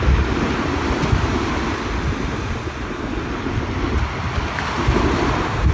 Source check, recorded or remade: recorded